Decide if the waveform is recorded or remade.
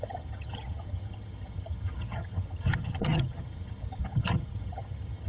remade